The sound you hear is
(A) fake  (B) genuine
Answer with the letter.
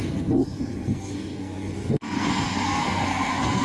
A